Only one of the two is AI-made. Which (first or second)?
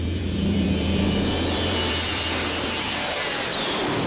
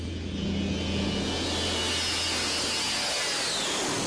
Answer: first